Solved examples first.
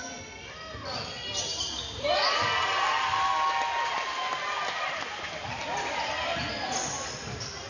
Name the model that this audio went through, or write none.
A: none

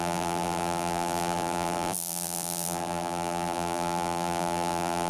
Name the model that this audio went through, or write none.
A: vocoder, BigVGAN v2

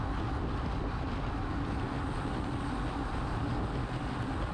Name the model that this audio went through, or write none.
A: none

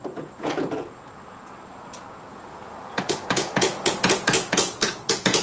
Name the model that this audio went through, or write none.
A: vocoder, Vocos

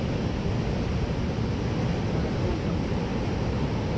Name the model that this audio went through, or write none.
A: none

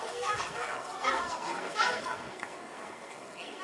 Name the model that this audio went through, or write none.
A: codec, SNAC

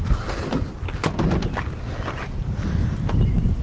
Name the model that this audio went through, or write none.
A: none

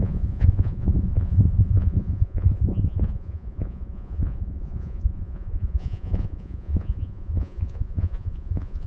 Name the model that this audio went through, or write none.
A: vocoder, Vocos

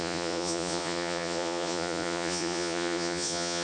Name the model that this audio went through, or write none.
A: vocoder, Vocos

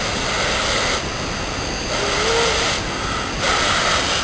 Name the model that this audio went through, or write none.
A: none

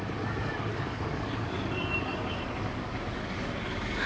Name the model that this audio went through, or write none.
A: codec, DAC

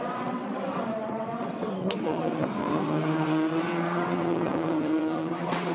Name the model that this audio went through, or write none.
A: vocoder, WaveNeXt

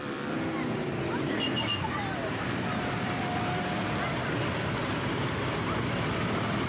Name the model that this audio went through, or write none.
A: none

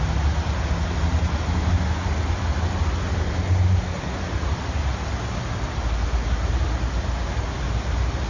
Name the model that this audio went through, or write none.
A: none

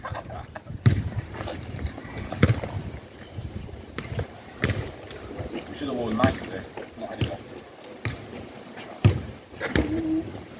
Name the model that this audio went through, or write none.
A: vocoder, BigVGAN v2